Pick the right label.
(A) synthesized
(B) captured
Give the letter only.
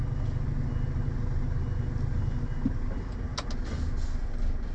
B